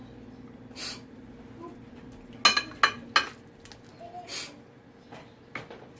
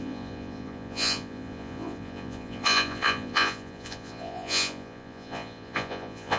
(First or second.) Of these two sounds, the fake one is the second